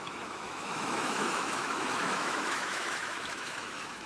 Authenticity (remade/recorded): remade